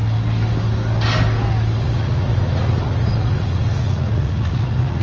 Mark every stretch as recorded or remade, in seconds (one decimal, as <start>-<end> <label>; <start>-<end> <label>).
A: 0.0-1.8 recorded; 1.8-5.0 remade